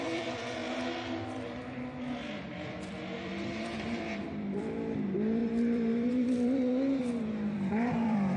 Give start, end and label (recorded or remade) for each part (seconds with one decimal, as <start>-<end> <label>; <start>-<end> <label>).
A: 0.0-8.4 remade